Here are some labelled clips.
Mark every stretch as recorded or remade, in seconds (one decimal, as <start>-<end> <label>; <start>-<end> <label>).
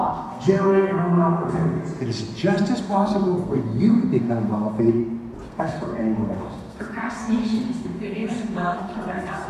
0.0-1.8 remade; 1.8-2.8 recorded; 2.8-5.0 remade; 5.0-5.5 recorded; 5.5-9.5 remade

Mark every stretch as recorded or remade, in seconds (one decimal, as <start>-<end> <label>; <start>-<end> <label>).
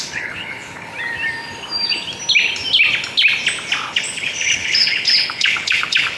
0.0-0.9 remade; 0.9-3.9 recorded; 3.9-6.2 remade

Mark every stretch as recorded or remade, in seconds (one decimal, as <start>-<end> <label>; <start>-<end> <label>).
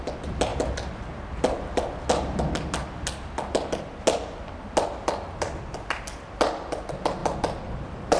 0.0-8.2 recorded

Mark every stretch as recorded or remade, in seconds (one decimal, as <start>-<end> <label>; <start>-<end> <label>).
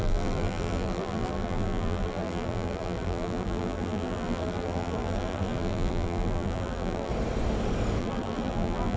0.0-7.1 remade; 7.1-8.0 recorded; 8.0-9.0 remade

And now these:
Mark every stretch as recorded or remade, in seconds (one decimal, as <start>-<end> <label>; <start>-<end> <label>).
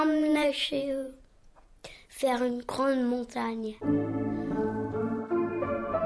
0.0-1.8 remade; 1.8-5.5 recorded; 5.5-6.1 remade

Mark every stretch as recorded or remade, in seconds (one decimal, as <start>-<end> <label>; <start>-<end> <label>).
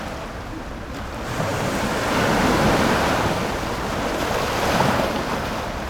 0.0-3.4 recorded; 3.4-5.4 remade; 5.4-5.9 recorded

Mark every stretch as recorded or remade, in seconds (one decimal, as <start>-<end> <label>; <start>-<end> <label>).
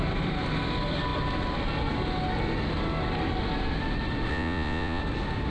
0.0-4.3 recorded; 4.3-5.0 remade; 5.0-5.5 recorded